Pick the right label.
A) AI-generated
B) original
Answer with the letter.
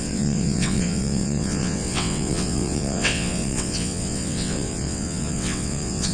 A